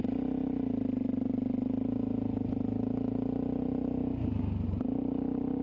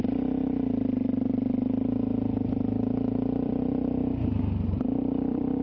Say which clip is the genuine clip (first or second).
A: first